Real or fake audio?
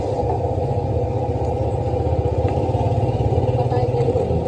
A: real